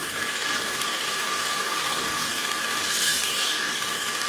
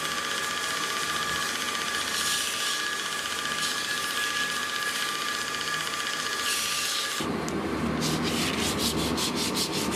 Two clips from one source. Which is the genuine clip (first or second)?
second